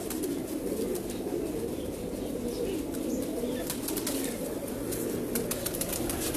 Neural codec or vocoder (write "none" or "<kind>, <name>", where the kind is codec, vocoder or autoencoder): none